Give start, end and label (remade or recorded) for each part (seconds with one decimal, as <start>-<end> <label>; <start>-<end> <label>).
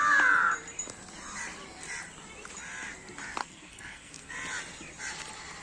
0.0-3.4 recorded; 3.4-4.3 remade; 4.3-5.6 recorded